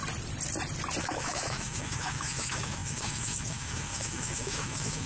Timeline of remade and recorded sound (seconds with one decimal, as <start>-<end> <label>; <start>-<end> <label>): 0.0-1.0 recorded; 1.0-5.1 remade